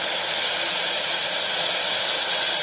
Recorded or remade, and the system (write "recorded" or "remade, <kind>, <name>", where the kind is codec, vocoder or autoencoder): recorded